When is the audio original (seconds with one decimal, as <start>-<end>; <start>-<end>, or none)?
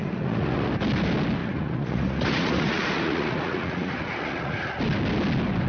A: 0.7-1.4; 4.8-5.7